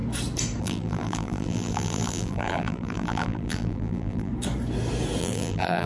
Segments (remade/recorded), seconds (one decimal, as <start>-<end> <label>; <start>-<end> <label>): 0.0-0.6 recorded; 0.6-4.3 remade; 4.3-5.2 recorded; 5.2-5.9 remade